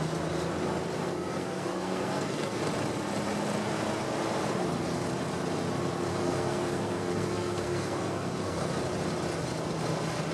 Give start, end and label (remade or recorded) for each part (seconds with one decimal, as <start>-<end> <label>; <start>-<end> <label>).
0.0-1.0 recorded; 1.0-2.6 remade; 2.6-6.1 recorded; 6.1-8.7 remade; 8.7-10.3 recorded